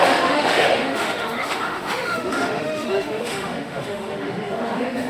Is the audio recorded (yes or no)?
no